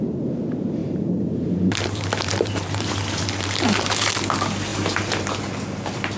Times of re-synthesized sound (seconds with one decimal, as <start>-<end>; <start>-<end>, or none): 0.8-4.1; 4.7-5.3